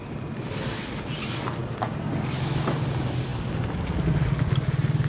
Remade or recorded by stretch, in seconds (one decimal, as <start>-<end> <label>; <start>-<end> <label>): 0.0-5.1 recorded